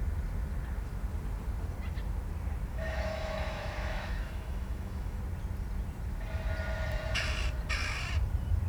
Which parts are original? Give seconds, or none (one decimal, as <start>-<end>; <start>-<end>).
0.0-2.7; 5.2-8.7

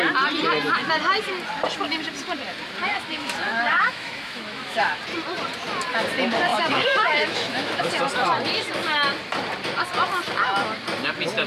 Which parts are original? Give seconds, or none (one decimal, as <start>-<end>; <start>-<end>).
0.0-2.8; 5.0-6.5; 7.8-11.5

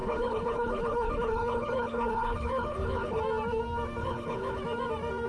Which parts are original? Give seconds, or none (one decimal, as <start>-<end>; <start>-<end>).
3.2-4.0; 4.6-5.3

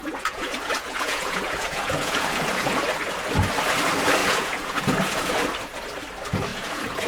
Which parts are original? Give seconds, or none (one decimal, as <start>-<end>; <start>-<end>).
2.8-4.2; 5.3-6.5

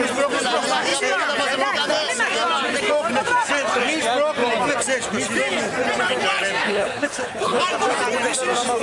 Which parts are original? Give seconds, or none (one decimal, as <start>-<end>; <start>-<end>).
0.0-6.6; 7.6-8.8

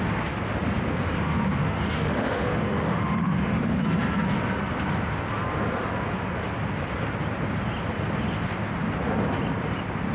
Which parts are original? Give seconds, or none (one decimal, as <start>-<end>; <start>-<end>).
0.0-1.6; 3.6-10.1